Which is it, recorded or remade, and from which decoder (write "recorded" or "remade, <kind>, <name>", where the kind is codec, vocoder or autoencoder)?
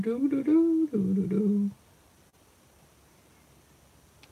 recorded